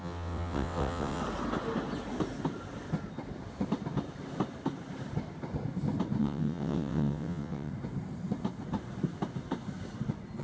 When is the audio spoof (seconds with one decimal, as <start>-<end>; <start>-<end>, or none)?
0.0-1.2; 6.2-7.7